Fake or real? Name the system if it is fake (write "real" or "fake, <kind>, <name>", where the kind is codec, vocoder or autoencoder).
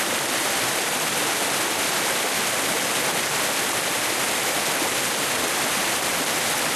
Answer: real